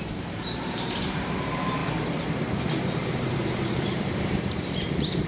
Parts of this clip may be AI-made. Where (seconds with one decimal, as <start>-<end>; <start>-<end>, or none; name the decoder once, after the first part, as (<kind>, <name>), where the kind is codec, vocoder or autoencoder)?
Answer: 0.0-5.3 (vocoder, BigVGAN v2)